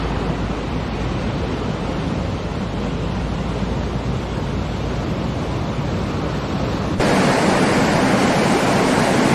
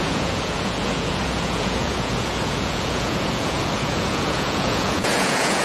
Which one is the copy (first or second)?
second